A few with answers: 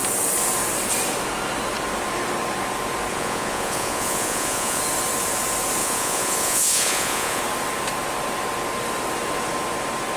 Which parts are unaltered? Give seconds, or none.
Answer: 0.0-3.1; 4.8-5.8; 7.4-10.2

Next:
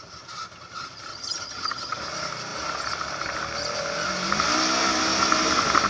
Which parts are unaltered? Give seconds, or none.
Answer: 0.0-1.1; 2.0-5.9

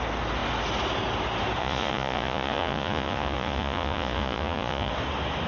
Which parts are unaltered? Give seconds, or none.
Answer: 0.0-1.6; 4.9-5.5

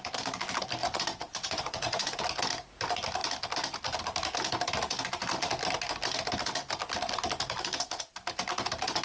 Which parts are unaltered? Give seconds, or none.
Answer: 0.0-0.8; 2.2-9.0

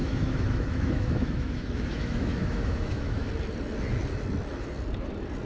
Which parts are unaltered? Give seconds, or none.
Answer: 3.3-5.5